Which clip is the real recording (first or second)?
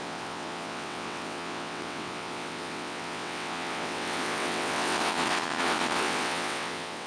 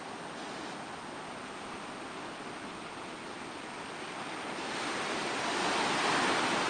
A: second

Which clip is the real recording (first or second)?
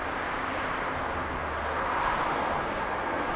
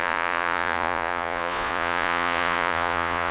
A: first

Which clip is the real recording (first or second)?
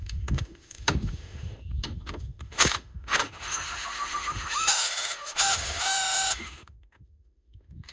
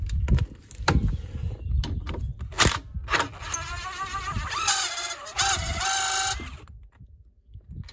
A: second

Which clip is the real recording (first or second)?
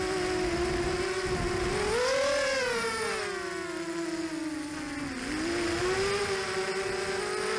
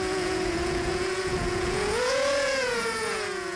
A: first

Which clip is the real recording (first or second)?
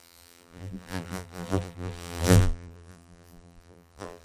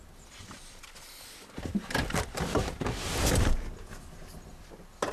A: second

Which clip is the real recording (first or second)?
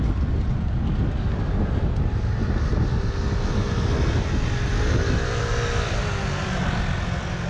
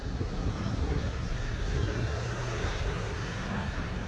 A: first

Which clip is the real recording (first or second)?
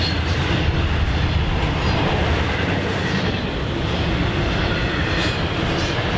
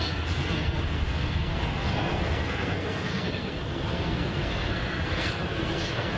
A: first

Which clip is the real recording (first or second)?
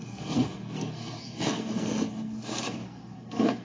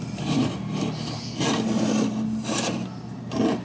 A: second